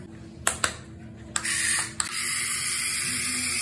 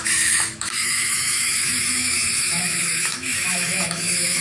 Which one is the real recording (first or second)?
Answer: first